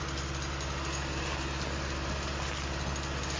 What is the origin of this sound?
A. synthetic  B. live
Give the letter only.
B